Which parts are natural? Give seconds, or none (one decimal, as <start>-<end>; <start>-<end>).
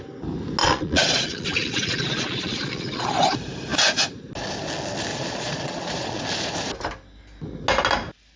0.0-0.6; 3.1-5.1; 6.2-8.4